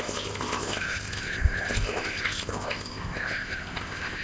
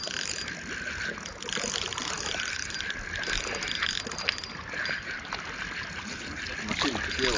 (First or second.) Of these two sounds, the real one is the second